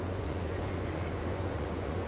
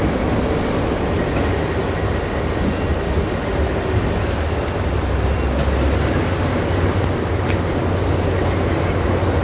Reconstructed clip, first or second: first